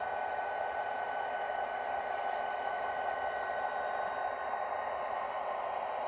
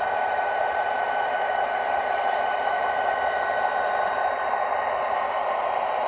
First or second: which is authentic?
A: first